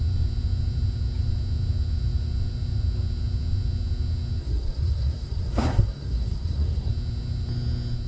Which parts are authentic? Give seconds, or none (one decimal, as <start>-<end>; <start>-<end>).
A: 0.0-4.4; 6.9-8.1